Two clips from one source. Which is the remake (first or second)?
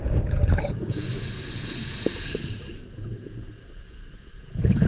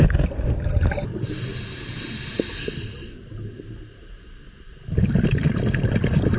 first